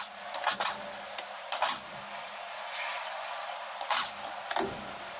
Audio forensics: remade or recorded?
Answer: recorded